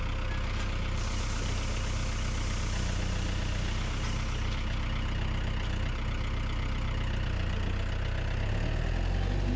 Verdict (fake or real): real